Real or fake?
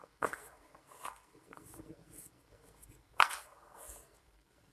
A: fake